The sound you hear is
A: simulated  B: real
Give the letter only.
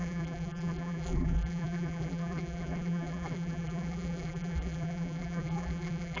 A